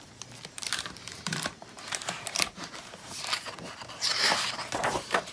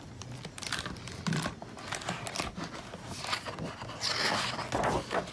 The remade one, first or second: first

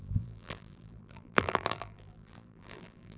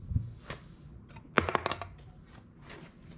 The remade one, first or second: first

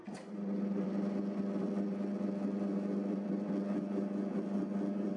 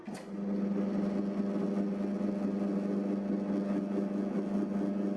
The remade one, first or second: first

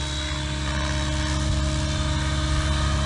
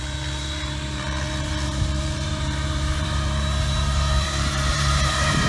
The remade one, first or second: second